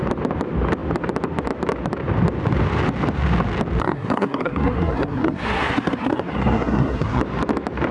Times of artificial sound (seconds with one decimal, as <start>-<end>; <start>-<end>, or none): 3.8-7.2